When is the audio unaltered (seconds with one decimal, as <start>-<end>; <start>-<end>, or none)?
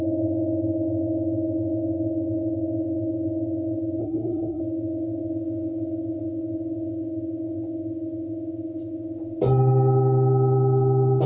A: 0.0-4.0; 4.6-11.3